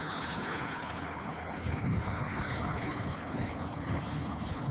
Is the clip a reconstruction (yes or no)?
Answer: yes